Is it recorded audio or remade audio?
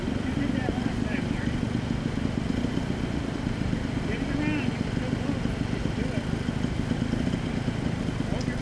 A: recorded